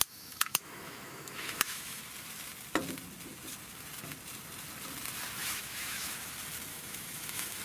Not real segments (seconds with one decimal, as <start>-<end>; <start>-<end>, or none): 0.0-2.0; 5.4-6.3; 6.7-7.6